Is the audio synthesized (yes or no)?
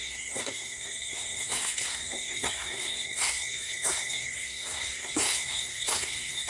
yes